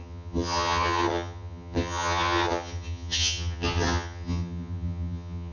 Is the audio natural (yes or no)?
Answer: no